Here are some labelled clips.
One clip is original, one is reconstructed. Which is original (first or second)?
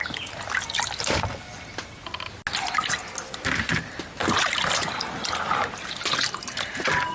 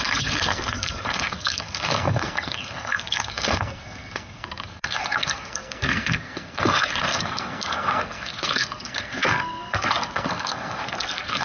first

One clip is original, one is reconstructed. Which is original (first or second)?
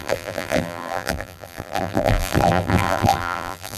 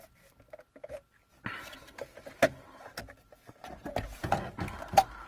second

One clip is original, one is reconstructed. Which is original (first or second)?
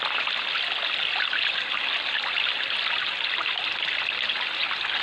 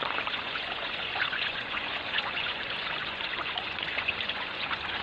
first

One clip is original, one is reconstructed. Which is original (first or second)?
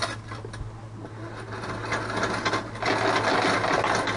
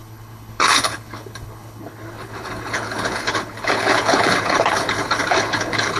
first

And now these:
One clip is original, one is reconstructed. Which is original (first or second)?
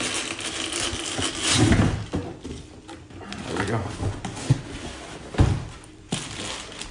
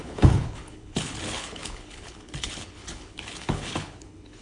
first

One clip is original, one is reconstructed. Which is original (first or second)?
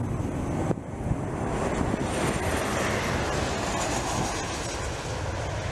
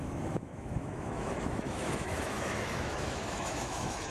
first